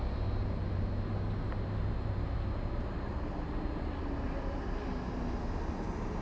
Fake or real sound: real